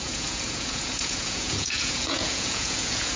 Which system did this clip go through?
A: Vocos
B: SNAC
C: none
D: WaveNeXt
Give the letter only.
A